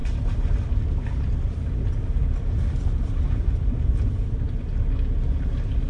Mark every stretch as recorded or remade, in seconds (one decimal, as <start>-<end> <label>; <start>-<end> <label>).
0.0-5.9 recorded